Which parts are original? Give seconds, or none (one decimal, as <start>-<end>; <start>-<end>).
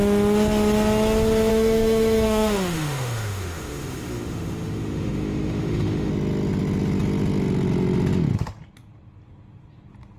0.0-1.5; 6.1-10.2